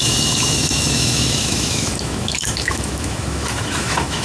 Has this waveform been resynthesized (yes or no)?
yes